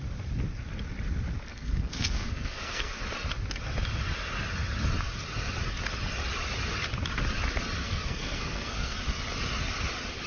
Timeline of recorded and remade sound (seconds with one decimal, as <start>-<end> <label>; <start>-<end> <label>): 0.0-1.5 recorded; 1.5-3.0 remade; 3.0-7.8 recorded; 7.8-9.0 remade; 9.0-10.3 recorded